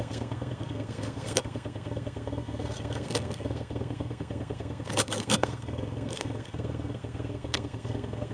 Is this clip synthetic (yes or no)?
yes